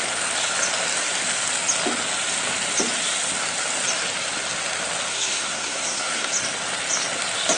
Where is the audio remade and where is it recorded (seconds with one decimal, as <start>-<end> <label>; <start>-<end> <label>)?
0.0-5.1 recorded; 5.1-6.3 remade; 6.3-7.6 recorded